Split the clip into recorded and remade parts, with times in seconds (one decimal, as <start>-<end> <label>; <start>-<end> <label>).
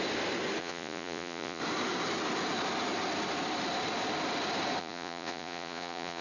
0.0-0.6 recorded; 0.6-1.6 remade; 1.6-4.8 recorded; 4.8-6.2 remade